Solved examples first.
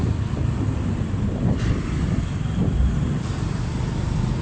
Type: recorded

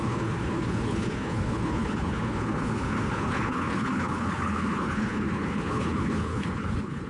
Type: remade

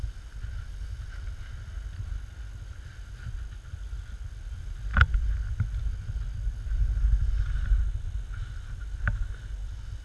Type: recorded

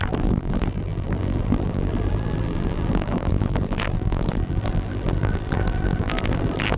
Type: remade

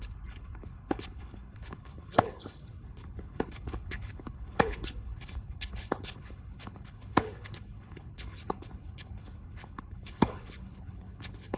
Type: remade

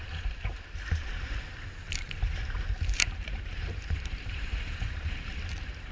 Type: remade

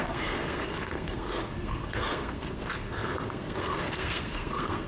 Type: remade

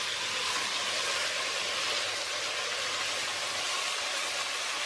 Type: recorded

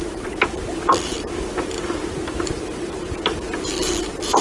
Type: remade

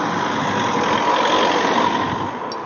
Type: recorded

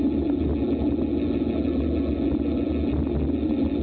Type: recorded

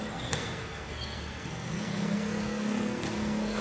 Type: remade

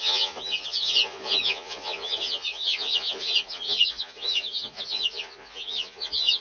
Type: remade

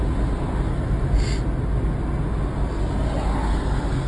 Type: recorded